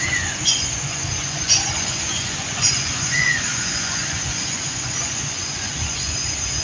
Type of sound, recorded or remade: remade